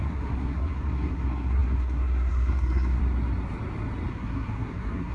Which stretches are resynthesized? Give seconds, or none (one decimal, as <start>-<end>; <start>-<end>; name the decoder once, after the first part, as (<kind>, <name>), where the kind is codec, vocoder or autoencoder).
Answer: 0.0-3.0 (codec, SNAC); 4.1-5.1